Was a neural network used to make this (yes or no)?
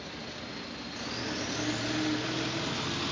no